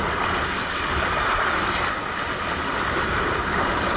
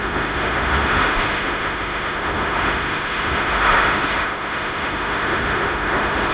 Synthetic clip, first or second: second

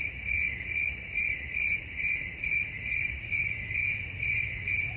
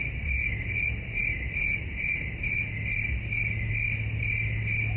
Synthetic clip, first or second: first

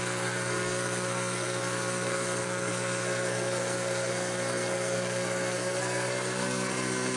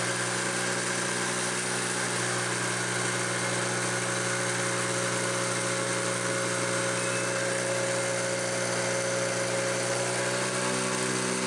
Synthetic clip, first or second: first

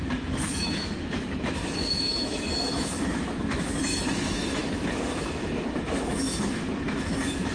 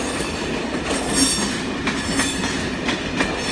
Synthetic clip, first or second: first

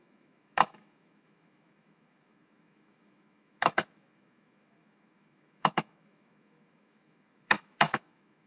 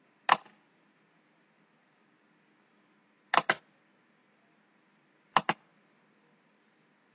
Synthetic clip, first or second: first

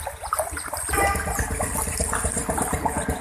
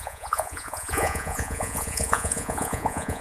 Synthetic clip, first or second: second